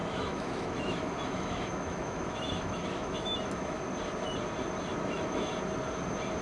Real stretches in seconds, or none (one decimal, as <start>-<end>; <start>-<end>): 3.8-4.9; 5.5-6.4